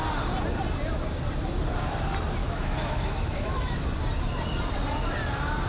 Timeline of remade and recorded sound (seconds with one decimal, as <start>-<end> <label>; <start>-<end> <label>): 0.0-2.4 recorded; 2.4-3.8 remade; 3.8-5.7 recorded